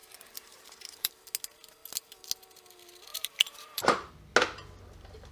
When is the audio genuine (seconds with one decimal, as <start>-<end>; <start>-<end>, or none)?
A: 1.1-3.1; 4.1-5.3